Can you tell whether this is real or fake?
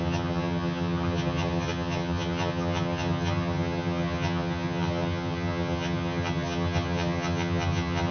fake